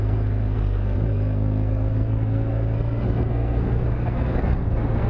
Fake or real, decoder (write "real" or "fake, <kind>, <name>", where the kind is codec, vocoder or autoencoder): fake, codec, SNAC